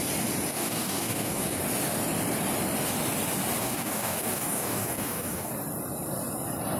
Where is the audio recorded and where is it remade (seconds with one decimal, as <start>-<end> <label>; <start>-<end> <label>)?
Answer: 0.0-0.5 recorded; 0.5-1.6 remade; 1.6-3.6 recorded; 3.6-5.5 remade; 5.5-6.8 recorded